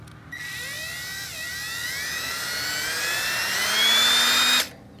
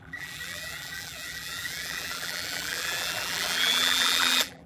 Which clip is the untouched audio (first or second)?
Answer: first